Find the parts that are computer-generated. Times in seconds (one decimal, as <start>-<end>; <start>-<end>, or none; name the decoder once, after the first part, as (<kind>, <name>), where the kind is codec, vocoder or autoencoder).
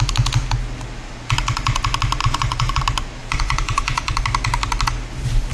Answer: 2.2-2.8 (vocoder, Vocos); 3.2-4.2